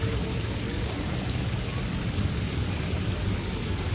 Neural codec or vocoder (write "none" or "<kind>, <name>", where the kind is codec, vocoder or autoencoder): codec, DAC